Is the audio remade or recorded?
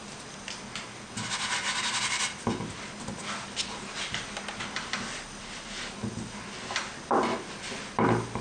recorded